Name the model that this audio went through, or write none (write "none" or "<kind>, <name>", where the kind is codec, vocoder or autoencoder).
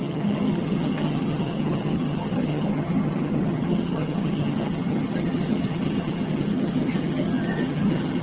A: vocoder, HiFi-GAN